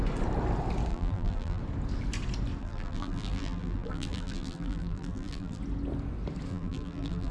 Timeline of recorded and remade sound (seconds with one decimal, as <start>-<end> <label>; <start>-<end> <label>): 0.0-0.9 recorded; 0.9-1.6 remade; 1.6-2.6 recorded; 2.6-5.6 remade; 5.6-6.5 recorded; 6.5-7.3 remade